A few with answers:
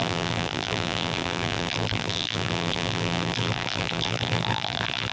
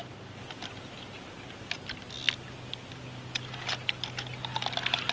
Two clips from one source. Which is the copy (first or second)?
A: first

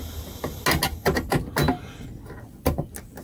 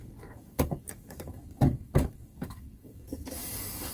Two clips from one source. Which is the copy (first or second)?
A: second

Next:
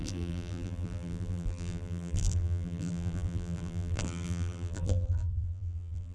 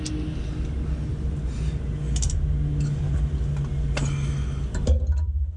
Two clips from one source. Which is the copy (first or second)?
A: first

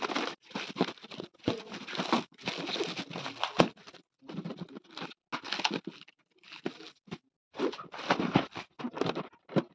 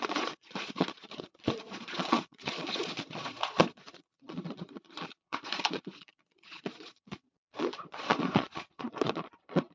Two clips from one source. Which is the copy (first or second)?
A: second